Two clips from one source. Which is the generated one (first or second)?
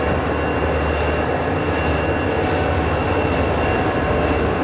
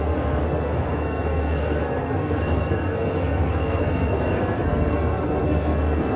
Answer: second